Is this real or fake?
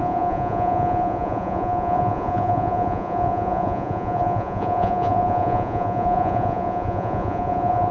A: fake